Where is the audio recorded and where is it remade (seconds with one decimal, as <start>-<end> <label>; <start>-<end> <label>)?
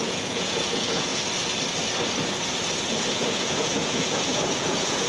0.0-1.1 remade; 1.1-3.1 recorded; 3.1-5.1 remade